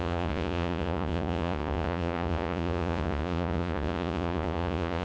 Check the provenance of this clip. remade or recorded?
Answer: remade